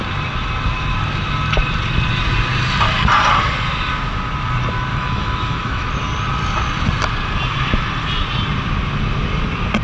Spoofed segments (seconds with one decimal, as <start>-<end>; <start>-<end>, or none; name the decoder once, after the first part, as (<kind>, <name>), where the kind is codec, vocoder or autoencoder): 4.9-5.9 (autoencoder, DAC-VAE)